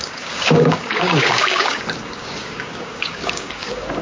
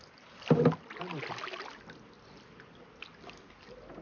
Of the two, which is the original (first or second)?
second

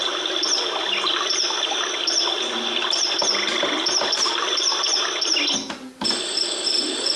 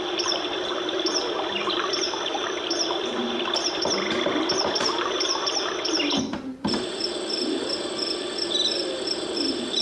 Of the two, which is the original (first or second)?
first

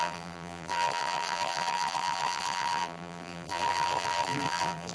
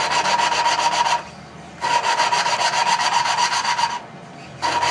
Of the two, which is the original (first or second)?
second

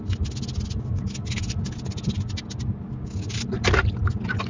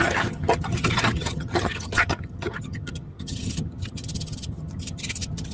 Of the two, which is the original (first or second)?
first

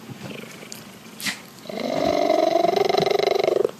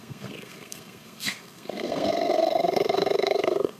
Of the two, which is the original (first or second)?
first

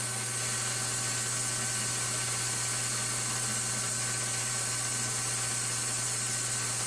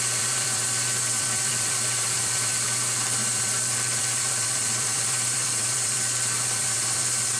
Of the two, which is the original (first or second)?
first